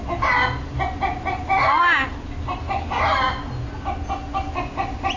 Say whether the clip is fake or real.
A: real